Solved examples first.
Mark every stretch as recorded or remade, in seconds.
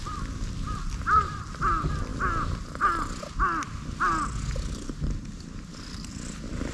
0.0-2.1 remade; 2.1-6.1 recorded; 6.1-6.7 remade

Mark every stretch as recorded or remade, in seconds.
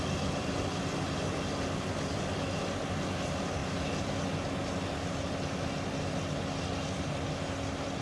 0.0-8.0 recorded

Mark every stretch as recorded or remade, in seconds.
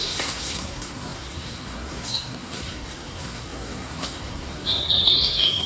0.0-5.7 remade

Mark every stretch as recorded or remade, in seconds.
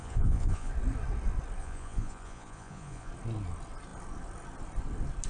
0.0-0.7 remade; 0.7-1.6 recorded; 1.6-3.1 remade; 3.1-5.3 recorded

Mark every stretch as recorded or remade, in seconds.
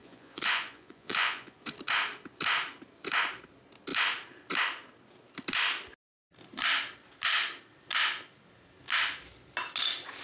0.0-1.6 remade; 1.6-10.2 recorded